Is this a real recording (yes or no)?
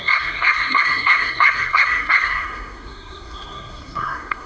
no